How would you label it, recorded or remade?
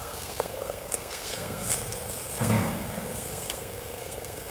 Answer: remade